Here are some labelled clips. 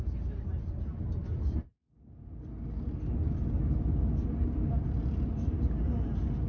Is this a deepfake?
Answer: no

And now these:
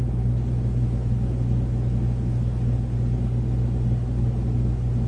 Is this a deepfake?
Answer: no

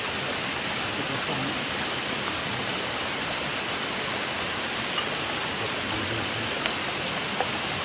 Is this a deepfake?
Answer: no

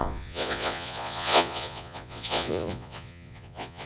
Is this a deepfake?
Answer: yes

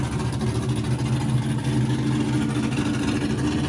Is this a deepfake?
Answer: no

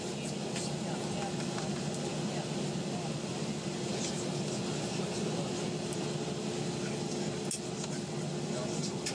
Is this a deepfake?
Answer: no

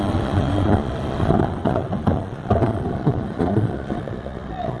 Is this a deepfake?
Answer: yes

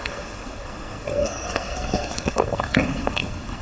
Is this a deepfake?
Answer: yes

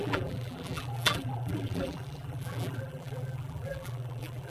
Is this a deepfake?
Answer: yes